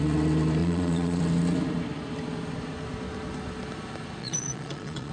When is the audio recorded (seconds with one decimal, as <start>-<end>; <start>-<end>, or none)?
0.0-0.6; 1.2-4.2